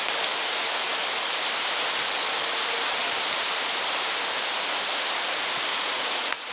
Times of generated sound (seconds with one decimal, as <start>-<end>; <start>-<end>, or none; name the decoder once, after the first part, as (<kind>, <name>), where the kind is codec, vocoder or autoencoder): 5.7-6.5 (vocoder, Vocos)